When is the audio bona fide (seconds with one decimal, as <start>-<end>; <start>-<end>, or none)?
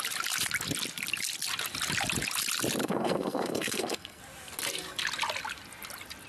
0.0-2.8; 4.2-6.3